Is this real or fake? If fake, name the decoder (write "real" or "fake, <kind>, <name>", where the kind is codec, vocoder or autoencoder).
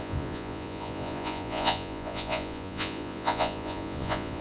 fake, vocoder, Vocos